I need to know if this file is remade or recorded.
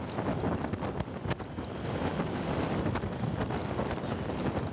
recorded